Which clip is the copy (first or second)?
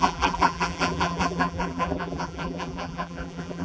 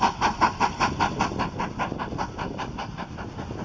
first